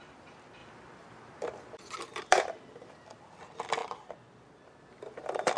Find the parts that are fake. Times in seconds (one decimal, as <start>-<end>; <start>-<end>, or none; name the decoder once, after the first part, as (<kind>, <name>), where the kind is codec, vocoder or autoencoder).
0.0-3.8 (vocoder, BigVGAN v2); 4.9-5.6